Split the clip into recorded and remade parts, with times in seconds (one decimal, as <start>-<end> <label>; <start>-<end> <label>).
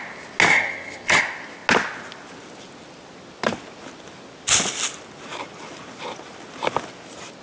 0.0-0.5 recorded; 0.5-1.2 remade; 1.2-7.4 recorded